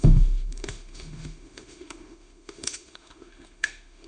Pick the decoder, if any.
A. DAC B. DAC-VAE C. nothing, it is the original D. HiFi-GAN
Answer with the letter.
B